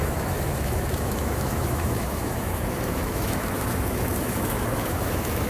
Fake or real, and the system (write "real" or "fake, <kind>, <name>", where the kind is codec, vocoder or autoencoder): fake, autoencoder, DAC-VAE